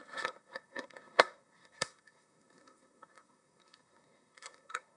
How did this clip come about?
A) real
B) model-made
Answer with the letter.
B